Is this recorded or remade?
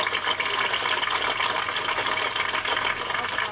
recorded